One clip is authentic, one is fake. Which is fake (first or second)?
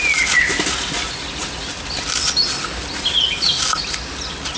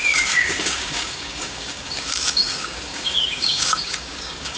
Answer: second